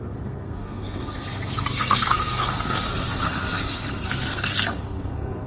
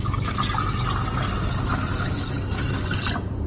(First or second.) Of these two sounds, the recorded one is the second